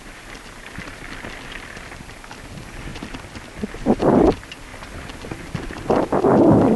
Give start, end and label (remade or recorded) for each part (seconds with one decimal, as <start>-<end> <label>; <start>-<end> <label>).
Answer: 0.0-2.9 recorded; 2.9-4.0 remade; 4.0-6.8 recorded